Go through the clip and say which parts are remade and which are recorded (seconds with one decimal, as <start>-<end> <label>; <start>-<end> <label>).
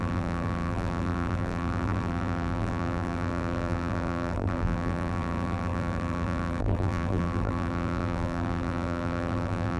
0.0-9.8 remade